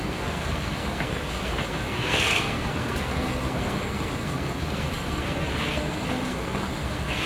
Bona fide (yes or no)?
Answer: no